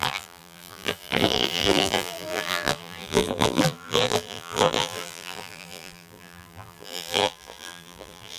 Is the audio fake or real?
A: fake